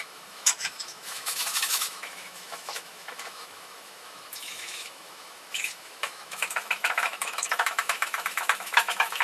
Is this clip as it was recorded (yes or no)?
no